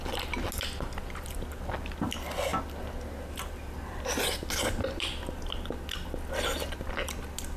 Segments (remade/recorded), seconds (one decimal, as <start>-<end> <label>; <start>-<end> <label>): 0.0-7.6 recorded